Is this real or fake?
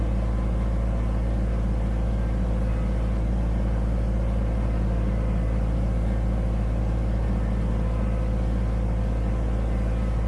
real